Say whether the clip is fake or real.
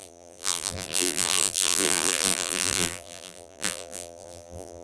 fake